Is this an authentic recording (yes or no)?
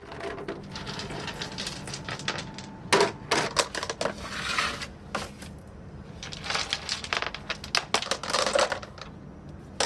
yes